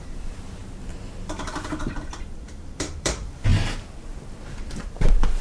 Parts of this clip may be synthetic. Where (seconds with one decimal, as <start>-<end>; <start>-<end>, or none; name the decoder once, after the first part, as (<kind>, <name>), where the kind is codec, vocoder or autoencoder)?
0.0-0.6 (vocoder, BigVGAN v2); 1.9-3.5; 4.6-5.4